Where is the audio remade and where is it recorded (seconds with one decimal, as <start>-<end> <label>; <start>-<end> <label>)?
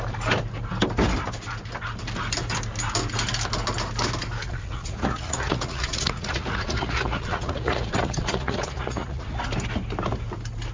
0.0-4.4 recorded; 4.4-9.4 remade; 9.4-10.7 recorded